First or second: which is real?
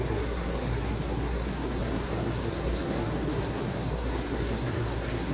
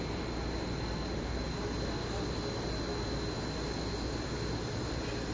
second